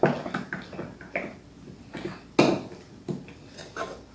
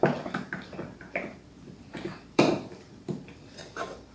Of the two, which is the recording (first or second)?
first